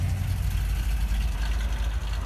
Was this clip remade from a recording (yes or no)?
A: no